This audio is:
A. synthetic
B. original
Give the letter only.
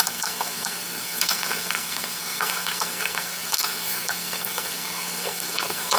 A